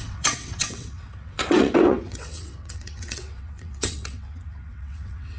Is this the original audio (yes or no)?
no